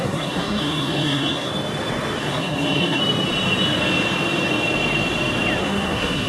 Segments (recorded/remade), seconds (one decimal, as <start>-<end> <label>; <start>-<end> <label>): 0.0-1.5 remade; 1.5-2.2 recorded; 2.2-3.0 remade; 3.0-5.6 recorded; 5.6-6.3 remade